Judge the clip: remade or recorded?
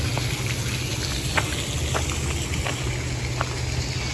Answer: recorded